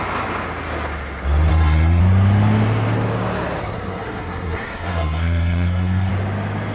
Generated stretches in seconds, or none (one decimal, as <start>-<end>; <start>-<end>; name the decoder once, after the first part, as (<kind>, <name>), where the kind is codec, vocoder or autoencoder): 1.5-2.0 (codec, SNAC); 3.6-6.1